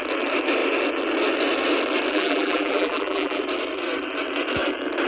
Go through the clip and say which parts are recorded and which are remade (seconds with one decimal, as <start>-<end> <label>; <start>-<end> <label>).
0.0-2.1 recorded; 2.1-3.4 remade; 3.4-5.1 recorded